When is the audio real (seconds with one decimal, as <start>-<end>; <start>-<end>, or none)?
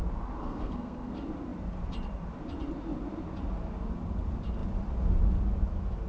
0.0-0.4; 1.1-6.1